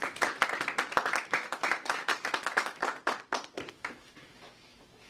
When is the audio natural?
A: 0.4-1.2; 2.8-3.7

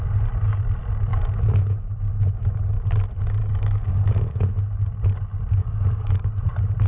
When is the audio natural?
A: 0.0-3.4; 4.4-5.6; 6.3-6.9

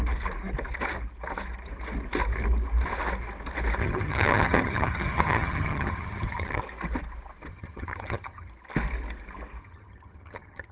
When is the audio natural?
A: 0.0-3.8; 6.6-7.5; 8.5-9.6

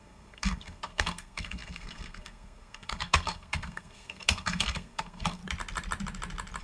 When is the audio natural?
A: 5.4-6.6

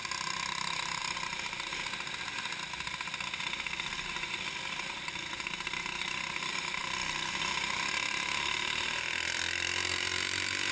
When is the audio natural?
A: 0.0-10.7

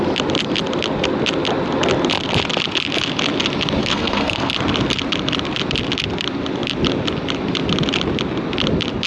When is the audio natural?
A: 0.0-3.8; 4.5-9.1